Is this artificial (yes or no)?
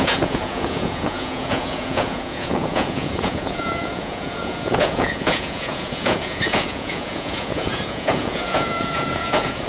yes